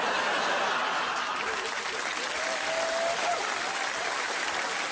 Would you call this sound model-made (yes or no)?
no